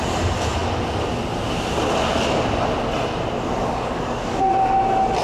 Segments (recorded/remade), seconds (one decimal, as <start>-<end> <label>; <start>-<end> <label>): 0.0-3.6 recorded; 3.6-4.4 remade; 4.4-5.2 recorded